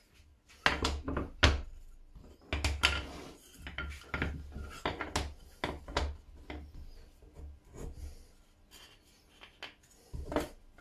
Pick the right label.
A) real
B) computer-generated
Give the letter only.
A